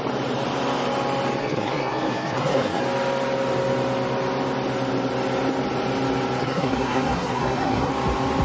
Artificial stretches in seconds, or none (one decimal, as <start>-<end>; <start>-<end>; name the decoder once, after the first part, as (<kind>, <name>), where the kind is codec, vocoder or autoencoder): 1.4-2.8 (codec, SNAC); 6.4-7.9